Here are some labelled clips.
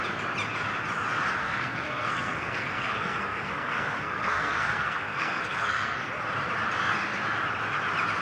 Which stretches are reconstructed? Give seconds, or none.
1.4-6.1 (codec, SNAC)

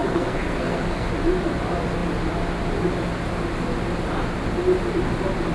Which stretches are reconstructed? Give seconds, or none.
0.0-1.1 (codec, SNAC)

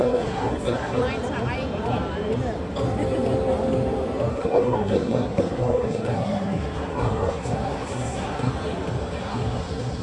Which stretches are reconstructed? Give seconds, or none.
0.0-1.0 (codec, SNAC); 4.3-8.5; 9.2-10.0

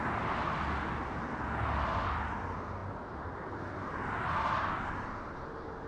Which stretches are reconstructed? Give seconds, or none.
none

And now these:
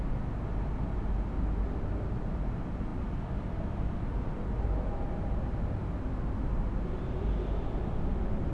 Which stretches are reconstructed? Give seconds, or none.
none

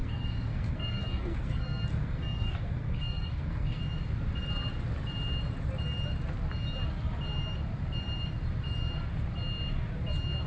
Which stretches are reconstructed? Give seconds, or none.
0.0-3.8 (codec, SNAC)

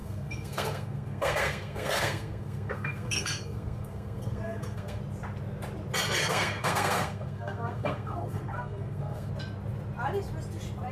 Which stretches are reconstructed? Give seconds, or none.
0.0-5.0 (codec, SNAC); 6.2-9.3

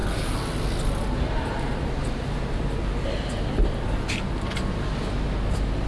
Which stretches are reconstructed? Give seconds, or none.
none